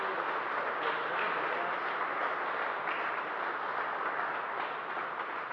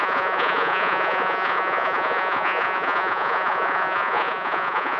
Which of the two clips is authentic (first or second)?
first